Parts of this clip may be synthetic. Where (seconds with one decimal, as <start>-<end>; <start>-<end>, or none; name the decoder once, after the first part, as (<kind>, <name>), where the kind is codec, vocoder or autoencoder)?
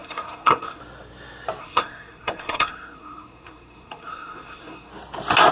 0.0-0.8 (codec, SNAC); 1.6-4.9